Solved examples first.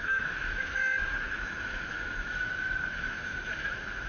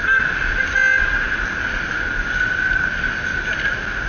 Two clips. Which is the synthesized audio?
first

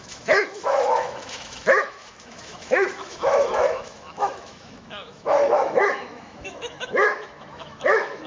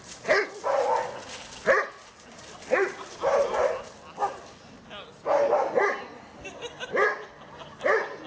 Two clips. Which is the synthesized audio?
first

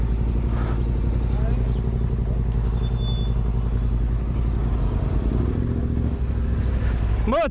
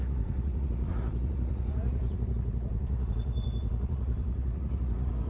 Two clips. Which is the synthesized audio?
second